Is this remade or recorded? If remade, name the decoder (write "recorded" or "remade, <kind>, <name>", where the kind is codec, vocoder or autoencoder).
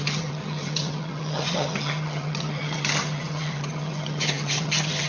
remade, vocoder, HiFi-GAN